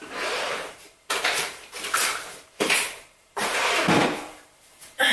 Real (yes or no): no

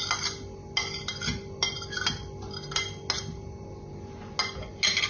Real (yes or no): yes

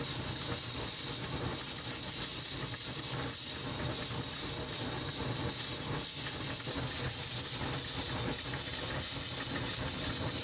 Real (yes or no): yes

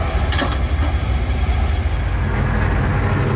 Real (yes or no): yes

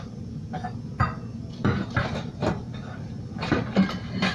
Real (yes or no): no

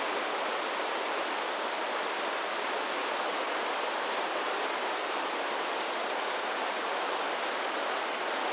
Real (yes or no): yes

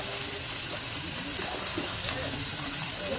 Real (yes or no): yes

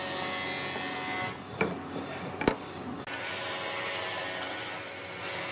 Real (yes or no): yes